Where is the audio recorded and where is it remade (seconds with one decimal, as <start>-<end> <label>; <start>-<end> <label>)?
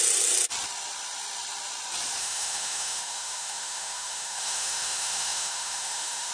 0.0-2.2 recorded; 2.2-6.3 remade